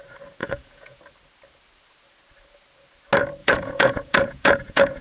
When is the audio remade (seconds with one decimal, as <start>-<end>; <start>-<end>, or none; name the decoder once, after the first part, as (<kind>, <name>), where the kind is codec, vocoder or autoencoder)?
0.4-1.0 (vocoder, Vocos); 3.4-5.0